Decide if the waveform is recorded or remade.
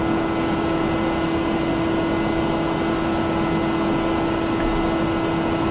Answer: recorded